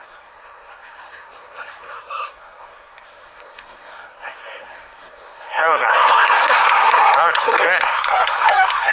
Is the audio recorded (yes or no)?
no